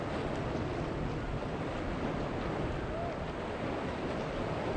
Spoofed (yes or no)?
no